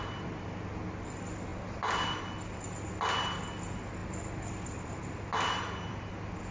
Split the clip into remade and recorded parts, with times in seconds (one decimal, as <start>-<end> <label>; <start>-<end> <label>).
0.0-1.5 recorded; 1.5-2.3 remade; 2.3-4.0 recorded; 4.0-6.1 remade; 6.1-6.5 recorded